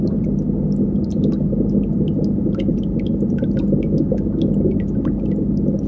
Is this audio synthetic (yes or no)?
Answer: no